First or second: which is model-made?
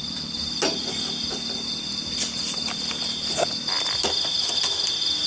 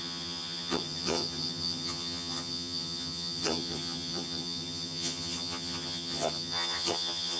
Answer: second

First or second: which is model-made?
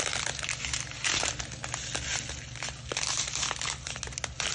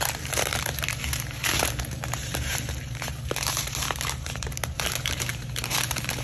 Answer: second